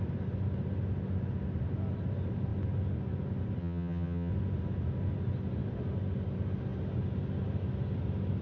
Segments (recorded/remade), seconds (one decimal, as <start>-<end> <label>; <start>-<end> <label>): 0.0-3.6 recorded; 3.6-4.3 remade; 4.3-8.4 recorded